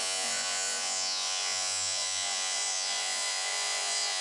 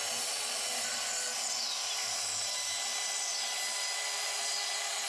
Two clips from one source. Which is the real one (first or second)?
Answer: second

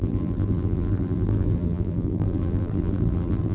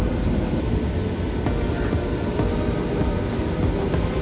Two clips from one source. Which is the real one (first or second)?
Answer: second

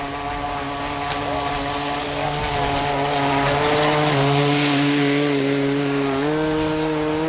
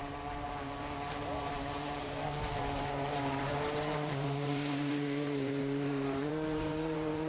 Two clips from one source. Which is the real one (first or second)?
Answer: first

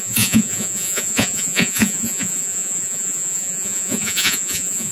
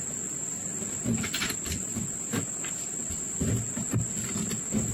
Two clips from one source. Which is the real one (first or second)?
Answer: second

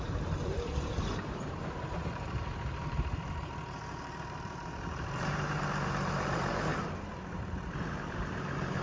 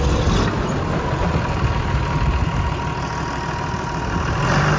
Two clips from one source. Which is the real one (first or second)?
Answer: second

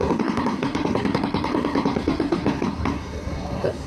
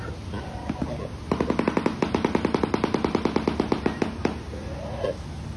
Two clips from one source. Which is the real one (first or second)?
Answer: second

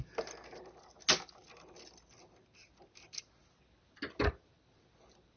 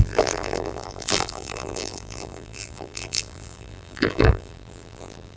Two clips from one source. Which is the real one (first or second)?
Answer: first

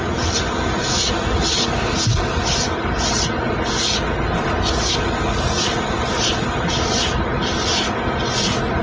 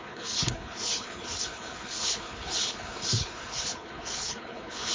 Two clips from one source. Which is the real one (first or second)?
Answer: first